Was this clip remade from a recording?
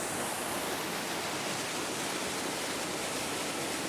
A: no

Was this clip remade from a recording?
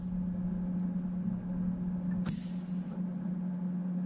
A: no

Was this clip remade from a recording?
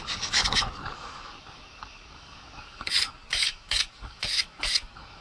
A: yes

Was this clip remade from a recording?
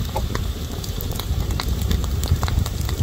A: yes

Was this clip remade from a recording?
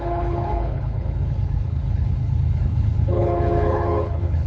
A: yes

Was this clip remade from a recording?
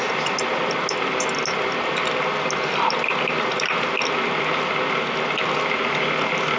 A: no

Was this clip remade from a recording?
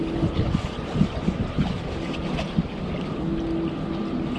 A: no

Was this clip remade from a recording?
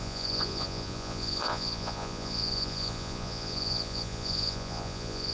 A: yes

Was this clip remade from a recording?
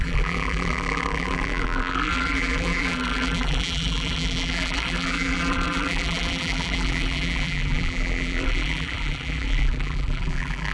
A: yes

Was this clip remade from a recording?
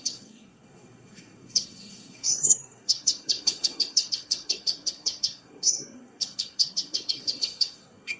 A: yes